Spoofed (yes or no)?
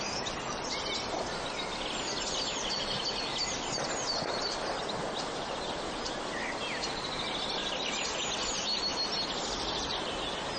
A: no